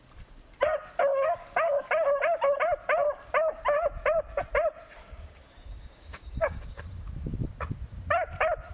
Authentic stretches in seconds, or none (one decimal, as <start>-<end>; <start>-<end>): 0.0-1.1; 1.8-5.0; 6.8-8.7